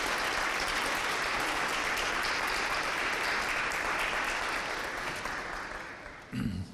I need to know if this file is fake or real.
real